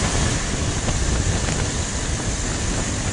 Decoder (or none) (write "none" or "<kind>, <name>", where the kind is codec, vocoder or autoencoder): none